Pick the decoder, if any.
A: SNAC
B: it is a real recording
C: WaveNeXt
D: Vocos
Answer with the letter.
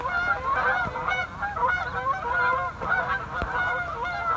B